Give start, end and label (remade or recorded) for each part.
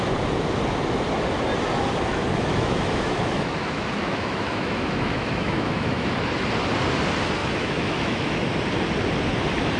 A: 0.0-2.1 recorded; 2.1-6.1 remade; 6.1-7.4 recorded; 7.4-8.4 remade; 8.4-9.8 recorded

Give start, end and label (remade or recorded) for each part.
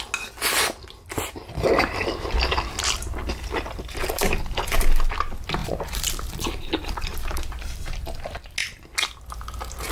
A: 0.0-4.0 recorded; 4.0-5.1 remade; 5.1-5.6 recorded; 5.6-8.0 remade; 8.0-9.9 recorded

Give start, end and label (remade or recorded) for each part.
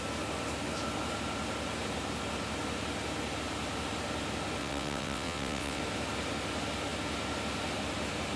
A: 0.0-4.6 recorded; 4.6-5.8 remade; 5.8-8.4 recorded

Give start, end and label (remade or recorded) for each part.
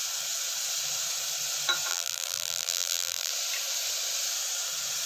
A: 0.0-1.9 recorded; 1.9-3.3 remade; 3.3-5.1 recorded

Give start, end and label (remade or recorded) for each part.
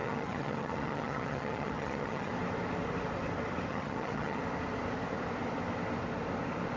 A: 0.0-2.3 remade; 2.3-3.7 recorded; 3.7-4.4 remade; 4.4-6.8 recorded